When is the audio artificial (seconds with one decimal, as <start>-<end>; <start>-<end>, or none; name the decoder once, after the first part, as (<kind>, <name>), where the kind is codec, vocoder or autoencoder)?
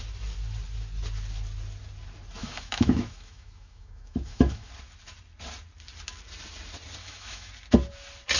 2.4-4.7 (autoencoder, DAC-VAE); 7.0-7.5